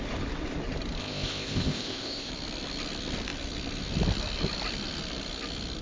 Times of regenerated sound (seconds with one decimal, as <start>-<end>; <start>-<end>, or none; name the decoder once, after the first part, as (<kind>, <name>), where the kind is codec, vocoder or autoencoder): 1.0-2.3 (codec, ZipCodec)